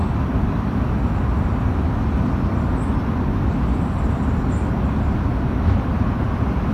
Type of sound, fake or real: real